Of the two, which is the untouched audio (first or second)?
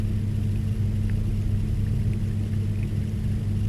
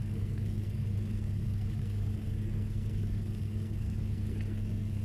first